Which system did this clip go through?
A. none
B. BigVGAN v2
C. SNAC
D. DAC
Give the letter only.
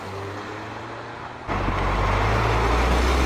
A